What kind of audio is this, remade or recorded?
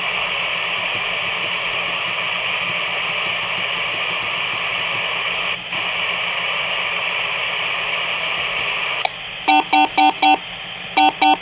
recorded